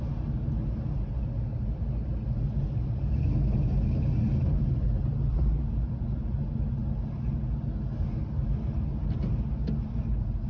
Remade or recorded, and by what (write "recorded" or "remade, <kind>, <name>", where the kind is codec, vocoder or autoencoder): recorded